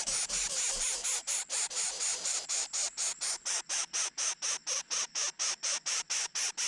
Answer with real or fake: fake